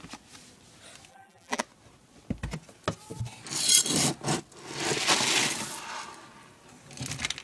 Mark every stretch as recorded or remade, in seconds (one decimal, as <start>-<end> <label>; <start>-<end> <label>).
0.0-1.1 recorded; 1.1-1.6 remade; 1.6-7.4 recorded